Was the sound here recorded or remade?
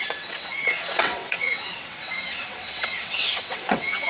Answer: remade